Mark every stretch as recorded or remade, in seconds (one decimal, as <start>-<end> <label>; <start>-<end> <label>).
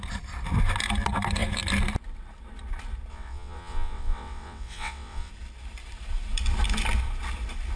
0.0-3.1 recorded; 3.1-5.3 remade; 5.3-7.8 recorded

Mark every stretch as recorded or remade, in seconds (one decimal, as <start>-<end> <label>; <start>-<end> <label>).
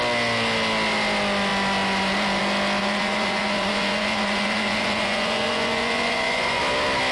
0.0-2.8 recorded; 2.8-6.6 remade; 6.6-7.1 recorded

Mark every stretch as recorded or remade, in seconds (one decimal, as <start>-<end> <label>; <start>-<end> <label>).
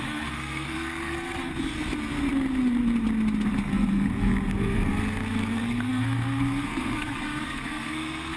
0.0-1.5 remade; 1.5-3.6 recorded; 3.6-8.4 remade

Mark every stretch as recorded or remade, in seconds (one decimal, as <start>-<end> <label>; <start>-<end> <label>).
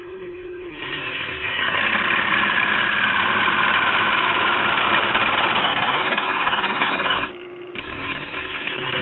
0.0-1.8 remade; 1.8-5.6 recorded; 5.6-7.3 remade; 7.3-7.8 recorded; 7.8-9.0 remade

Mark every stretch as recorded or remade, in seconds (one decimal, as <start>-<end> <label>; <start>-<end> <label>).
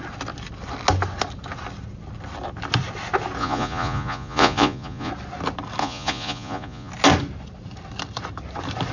0.0-3.4 recorded; 3.4-5.1 remade; 5.1-5.8 recorded; 5.8-6.9 remade; 6.9-8.9 recorded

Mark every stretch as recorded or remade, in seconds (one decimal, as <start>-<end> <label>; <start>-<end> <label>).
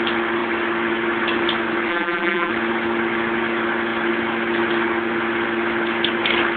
0.0-1.9 recorded; 1.9-2.5 remade; 2.5-6.6 recorded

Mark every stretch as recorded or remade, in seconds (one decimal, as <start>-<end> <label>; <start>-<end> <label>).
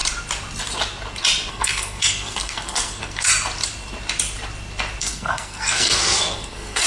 0.0-1.5 recorded; 1.5-3.3 remade; 3.3-5.0 recorded; 5.0-6.9 remade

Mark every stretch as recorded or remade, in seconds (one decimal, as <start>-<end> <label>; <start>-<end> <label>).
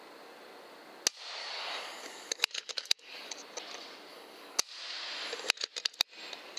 0.0-1.4 recorded; 1.4-3.3 remade; 3.3-4.1 recorded; 4.1-4.6 remade; 4.6-6.6 recorded